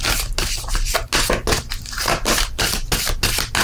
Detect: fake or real real